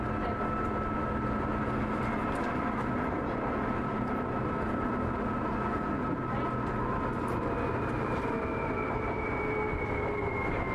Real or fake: real